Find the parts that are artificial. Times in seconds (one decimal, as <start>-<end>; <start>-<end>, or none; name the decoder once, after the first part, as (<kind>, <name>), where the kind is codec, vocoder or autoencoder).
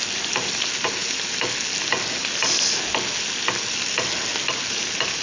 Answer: none